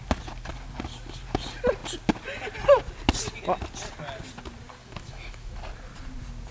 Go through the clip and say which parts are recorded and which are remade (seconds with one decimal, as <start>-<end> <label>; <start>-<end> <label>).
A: 0.0-4.8 recorded; 4.8-5.5 remade; 5.5-6.5 recorded